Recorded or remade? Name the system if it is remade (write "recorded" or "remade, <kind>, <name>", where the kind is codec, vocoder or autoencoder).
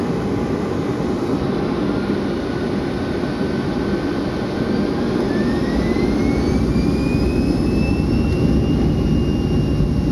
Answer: recorded